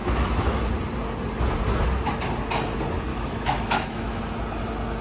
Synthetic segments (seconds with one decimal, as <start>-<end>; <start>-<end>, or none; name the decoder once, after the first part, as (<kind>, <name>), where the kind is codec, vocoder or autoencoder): 0.0-0.7 (autoencoder, DAC-VAE); 3.1-4.2